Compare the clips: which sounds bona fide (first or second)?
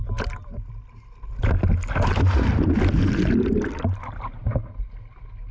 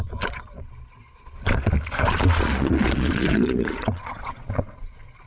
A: first